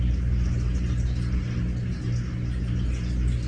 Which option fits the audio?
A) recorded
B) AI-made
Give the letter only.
A